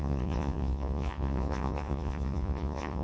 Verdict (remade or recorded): remade